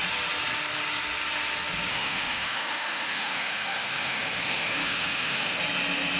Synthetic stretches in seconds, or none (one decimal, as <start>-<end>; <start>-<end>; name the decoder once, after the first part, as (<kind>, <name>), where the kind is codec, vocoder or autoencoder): 1.9-5.6 (autoencoder, DAC-VAE)